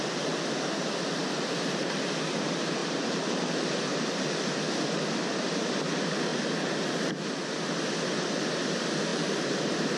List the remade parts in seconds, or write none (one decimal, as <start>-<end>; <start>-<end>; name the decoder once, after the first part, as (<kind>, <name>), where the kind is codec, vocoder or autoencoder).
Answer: 1.2-1.8 (vocoder, BigVGAN v2); 2.8-4.6; 6.3-7.1; 9.1-10.0